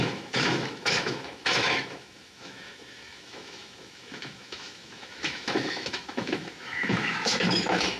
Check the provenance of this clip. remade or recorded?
remade